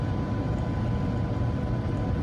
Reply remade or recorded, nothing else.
recorded